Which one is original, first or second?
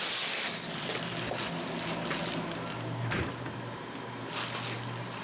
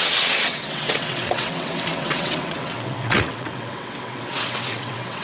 first